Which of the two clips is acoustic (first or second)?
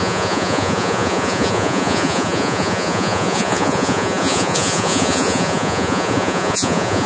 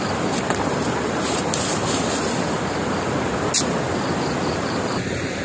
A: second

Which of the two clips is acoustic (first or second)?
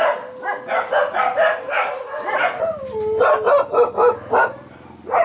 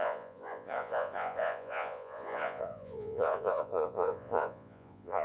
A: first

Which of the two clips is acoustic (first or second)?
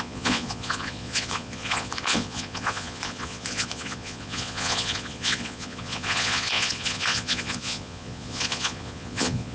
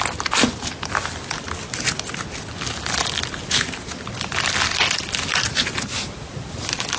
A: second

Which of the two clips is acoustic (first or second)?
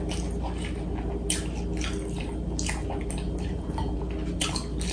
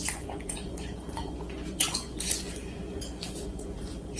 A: first